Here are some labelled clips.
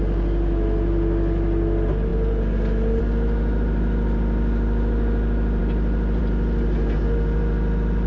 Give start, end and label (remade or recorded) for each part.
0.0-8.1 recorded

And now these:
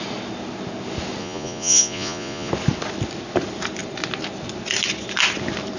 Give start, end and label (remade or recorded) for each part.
0.0-1.2 recorded; 1.2-2.5 remade; 2.5-5.8 recorded

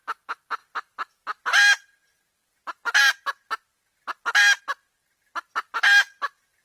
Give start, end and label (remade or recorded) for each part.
0.0-6.6 recorded